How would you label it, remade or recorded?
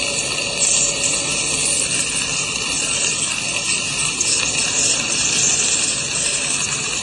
recorded